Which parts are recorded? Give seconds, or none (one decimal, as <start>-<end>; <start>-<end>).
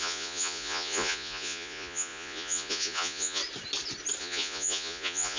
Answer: 3.4-4.2